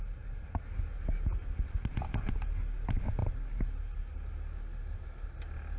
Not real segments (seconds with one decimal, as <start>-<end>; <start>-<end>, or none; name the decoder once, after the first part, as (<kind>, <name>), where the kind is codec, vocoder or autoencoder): none